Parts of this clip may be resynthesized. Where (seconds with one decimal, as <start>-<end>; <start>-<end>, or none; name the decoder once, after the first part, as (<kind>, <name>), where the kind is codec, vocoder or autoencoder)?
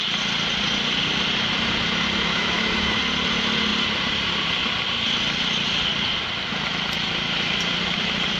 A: 2.3-3.0 (autoencoder, DAC-VAE)